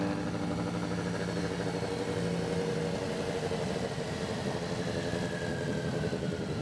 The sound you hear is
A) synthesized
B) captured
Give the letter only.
B